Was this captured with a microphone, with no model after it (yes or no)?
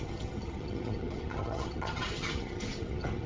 no